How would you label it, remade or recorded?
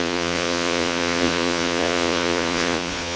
remade